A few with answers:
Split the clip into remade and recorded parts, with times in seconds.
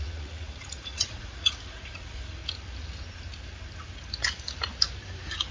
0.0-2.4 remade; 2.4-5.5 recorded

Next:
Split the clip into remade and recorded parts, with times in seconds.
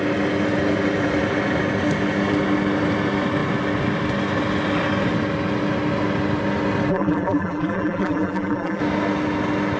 0.0-6.9 recorded; 6.9-8.8 remade; 8.8-9.8 recorded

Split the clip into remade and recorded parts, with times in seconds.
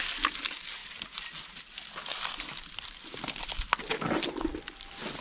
0.0-5.2 recorded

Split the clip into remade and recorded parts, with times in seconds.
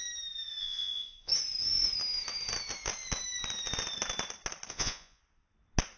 0.0-0.6 recorded; 0.6-1.3 remade; 1.3-4.7 recorded; 4.7-5.2 remade; 5.2-6.0 recorded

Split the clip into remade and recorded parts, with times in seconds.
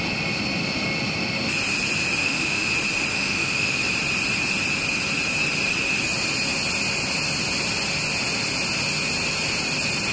0.0-2.2 recorded; 2.2-2.7 remade; 2.7-3.1 recorded; 3.1-3.8 remade; 3.8-10.1 recorded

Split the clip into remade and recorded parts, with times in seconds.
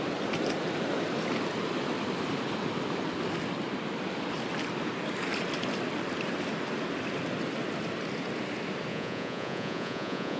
0.0-8.9 recorded; 8.9-10.4 remade